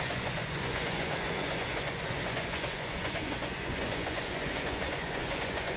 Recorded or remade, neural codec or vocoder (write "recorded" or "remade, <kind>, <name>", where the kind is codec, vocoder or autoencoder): remade, vocoder, Vocos